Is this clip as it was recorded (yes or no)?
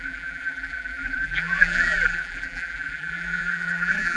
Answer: no